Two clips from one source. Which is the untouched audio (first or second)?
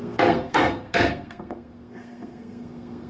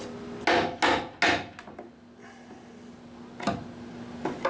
second